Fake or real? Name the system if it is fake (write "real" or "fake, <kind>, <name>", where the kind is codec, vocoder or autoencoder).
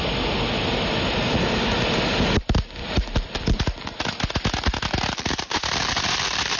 real